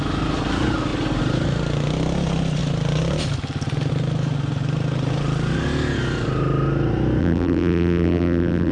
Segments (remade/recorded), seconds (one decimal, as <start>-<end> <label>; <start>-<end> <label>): 0.0-7.2 recorded; 7.2-8.7 remade